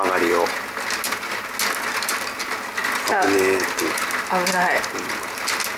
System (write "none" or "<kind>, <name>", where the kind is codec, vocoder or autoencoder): none